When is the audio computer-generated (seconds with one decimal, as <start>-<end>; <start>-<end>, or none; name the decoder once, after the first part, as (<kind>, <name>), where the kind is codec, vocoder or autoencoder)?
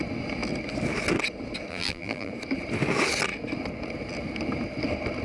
1.7-2.3 (vocoder, BigVGAN v2)